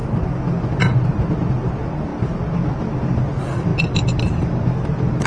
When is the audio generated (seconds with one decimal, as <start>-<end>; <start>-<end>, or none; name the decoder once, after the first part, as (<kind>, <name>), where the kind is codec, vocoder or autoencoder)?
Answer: none